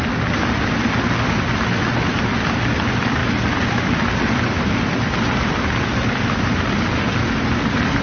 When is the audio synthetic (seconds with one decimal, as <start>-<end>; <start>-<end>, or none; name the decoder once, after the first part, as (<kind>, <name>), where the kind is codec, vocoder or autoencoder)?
none